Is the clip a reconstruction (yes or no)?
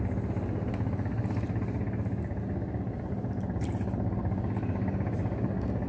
no